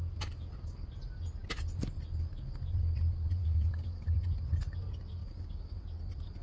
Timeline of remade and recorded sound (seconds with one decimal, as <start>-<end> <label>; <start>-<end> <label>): 0.0-3.4 recorded; 3.4-4.2 remade; 4.2-5.2 recorded; 5.2-5.8 remade; 5.8-6.4 recorded